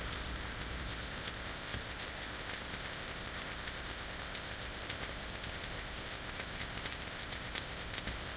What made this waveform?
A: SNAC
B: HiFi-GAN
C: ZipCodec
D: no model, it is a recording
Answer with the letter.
C